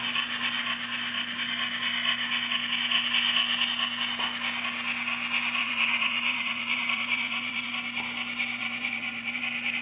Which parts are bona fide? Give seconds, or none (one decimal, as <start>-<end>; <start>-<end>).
0.0-5.6; 7.7-8.6; 9.4-9.8